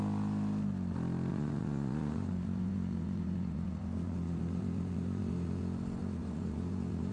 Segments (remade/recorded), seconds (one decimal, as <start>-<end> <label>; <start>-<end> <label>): 0.0-1.3 recorded; 1.3-5.6 remade; 5.6-6.0 recorded; 6.0-7.1 remade